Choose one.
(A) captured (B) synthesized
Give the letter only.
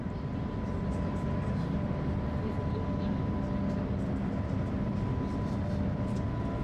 A